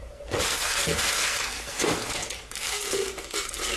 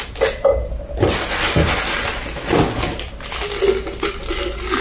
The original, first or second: second